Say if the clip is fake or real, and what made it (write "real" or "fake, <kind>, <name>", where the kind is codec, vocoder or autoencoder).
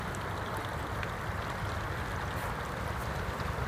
real